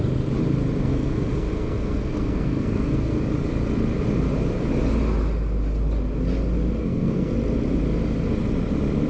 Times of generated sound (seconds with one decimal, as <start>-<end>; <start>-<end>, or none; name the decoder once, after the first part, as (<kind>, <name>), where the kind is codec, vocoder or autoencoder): 0.8-3.2 (codec, SNAC); 6.8-7.3